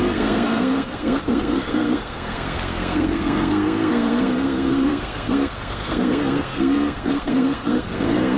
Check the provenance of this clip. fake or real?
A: fake